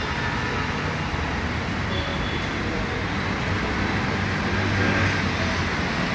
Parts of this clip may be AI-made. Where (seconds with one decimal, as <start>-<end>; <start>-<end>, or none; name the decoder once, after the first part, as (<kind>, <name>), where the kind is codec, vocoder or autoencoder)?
none